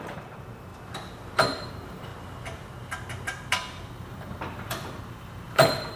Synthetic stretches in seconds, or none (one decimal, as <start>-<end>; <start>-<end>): 0.0-0.7; 1.7-2.1; 3.9-6.0